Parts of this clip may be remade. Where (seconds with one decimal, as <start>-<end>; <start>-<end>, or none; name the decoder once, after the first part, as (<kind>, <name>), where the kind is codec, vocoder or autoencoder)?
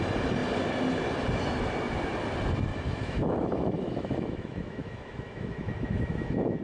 2.7-6.6 (autoencoder, DAC-VAE)